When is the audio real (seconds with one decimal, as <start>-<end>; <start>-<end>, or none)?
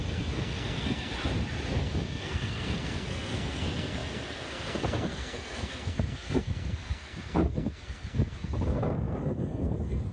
1.1-1.8